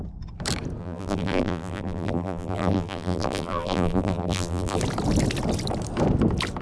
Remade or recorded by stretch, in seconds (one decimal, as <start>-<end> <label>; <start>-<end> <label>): 0.0-0.8 recorded; 0.8-4.8 remade; 4.8-6.6 recorded